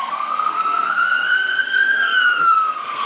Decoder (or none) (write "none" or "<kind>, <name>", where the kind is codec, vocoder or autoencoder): codec, SNAC